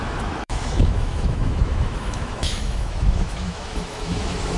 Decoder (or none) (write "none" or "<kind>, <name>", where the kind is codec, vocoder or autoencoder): autoencoder, DAC-VAE